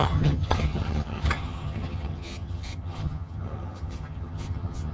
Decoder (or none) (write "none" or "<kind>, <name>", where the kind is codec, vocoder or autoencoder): vocoder, HiFi-GAN